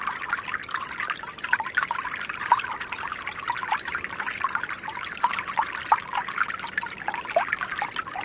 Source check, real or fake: real